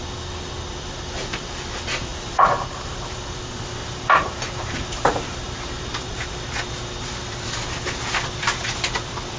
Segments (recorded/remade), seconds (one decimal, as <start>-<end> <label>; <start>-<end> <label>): 0.0-2.1 recorded; 2.1-3.4 remade; 3.4-3.8 recorded; 3.8-6.3 remade; 6.3-9.4 recorded

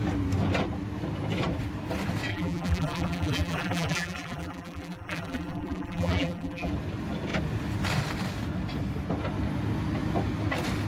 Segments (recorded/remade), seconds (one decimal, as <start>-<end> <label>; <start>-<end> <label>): 0.0-2.3 recorded; 2.3-6.7 remade; 6.7-10.9 recorded

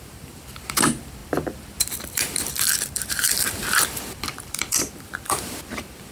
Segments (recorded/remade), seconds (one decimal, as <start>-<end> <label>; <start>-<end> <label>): 0.0-6.1 remade

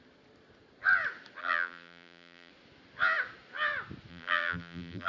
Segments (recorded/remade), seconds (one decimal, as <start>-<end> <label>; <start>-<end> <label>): 0.0-1.4 recorded; 1.4-2.5 remade; 2.5-4.1 recorded; 4.1-5.1 remade

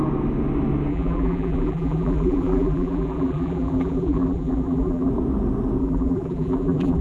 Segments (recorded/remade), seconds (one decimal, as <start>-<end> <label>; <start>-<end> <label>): 0.0-0.9 recorded; 0.9-5.1 remade; 5.1-5.8 recorded; 5.8-7.0 remade

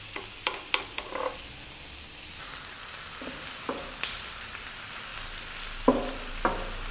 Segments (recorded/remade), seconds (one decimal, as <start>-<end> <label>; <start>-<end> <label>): 0.0-6.9 recorded

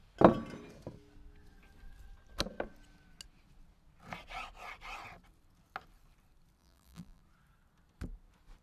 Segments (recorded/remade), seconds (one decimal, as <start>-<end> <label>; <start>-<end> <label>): 0.0-6.6 recorded; 6.6-7.2 remade; 7.2-8.6 recorded